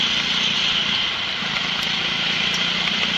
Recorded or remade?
recorded